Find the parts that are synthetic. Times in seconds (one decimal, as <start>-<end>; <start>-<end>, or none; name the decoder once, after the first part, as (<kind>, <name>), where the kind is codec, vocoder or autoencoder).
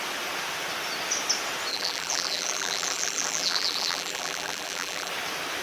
1.7-5.1 (vocoder, BigVGAN v2)